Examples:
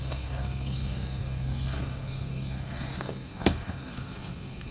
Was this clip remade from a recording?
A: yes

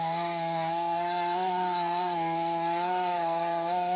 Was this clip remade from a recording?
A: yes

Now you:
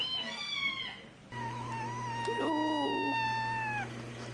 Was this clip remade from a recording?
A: no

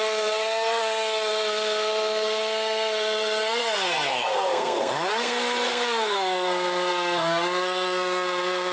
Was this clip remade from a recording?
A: yes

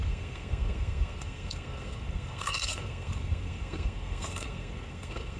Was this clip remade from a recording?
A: yes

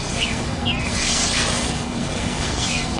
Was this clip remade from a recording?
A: yes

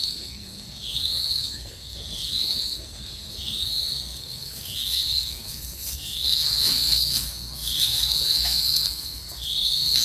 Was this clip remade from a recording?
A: yes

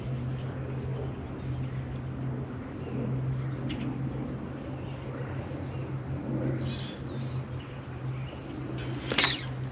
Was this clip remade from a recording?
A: no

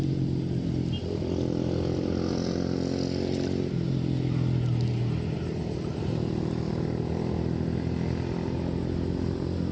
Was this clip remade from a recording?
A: no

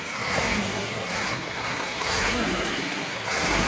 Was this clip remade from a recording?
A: yes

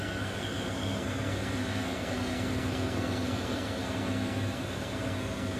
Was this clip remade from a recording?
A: yes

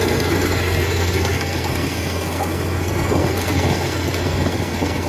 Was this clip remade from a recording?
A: yes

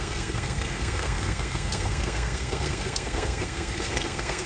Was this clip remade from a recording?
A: yes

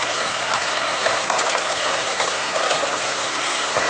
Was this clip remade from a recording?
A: yes